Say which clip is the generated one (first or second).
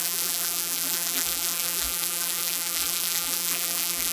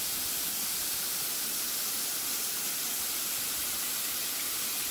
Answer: first